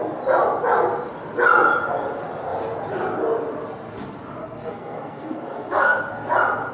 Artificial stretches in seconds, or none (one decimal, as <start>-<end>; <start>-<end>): 4.4-6.0